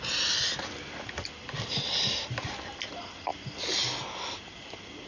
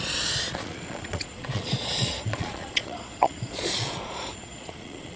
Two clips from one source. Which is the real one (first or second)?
first